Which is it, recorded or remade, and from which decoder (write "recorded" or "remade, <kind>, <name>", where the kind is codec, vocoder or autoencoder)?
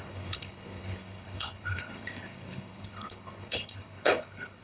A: remade, codec, HILCodec